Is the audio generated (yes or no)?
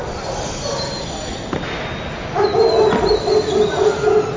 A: no